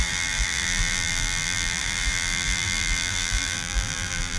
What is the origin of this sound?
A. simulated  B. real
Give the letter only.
A